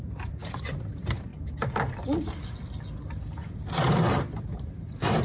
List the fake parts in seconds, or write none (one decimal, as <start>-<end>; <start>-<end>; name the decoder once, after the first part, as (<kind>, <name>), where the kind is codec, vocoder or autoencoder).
0.0-1.3 (vocoder, BigVGAN v2); 4.4-5.2